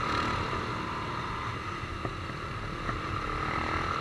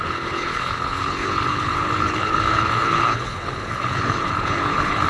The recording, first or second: first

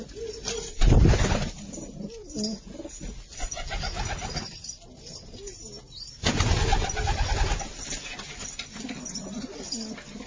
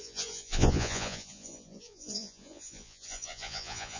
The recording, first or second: first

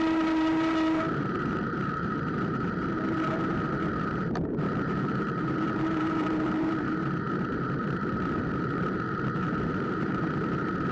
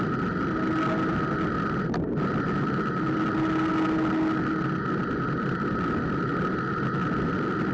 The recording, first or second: second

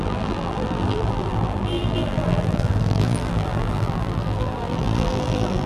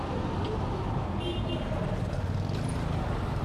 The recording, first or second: second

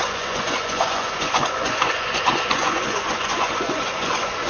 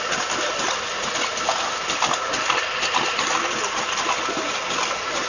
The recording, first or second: second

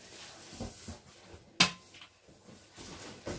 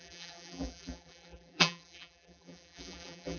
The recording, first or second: first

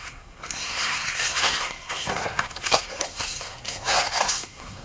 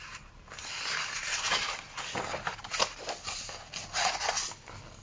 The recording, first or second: second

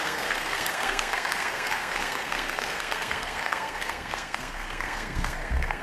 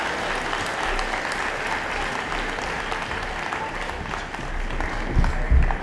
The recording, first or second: second